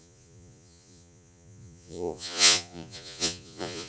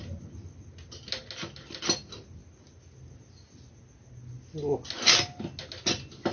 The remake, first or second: first